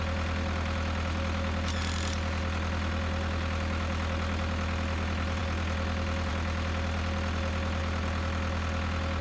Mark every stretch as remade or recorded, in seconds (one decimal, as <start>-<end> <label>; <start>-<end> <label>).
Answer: 0.0-9.2 recorded